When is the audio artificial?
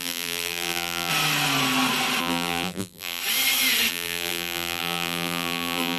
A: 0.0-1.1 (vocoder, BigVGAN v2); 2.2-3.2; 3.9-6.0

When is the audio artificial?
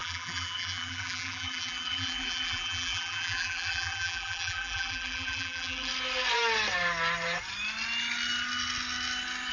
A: 0.0-5.9 (vocoder, BigVGAN v2)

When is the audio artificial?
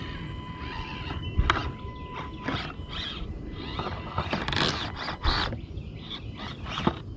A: none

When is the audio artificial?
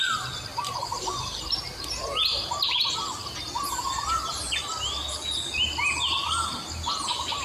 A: 0.5-2.0 (vocoder, BigVGAN v2); 3.0-4.5